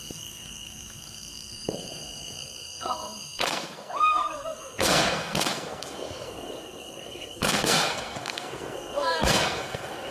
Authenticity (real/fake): fake